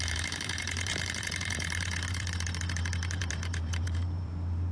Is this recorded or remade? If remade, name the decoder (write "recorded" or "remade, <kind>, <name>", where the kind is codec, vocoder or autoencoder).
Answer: remade, vocoder, BigVGAN v2